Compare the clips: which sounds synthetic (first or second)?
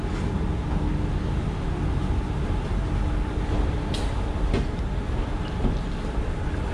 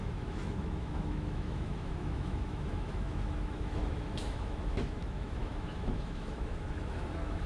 second